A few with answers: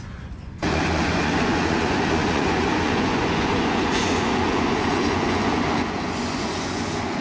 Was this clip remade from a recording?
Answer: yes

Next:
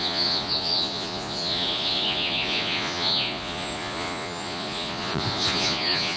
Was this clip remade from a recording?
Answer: yes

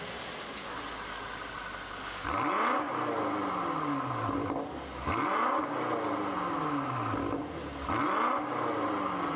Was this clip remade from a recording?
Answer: no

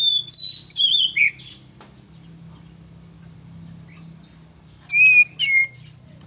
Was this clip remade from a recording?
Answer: no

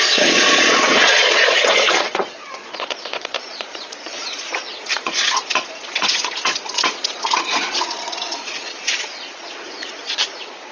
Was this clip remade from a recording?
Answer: yes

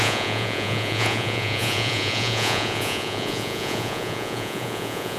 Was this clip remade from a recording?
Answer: yes